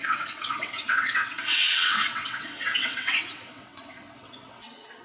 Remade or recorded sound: remade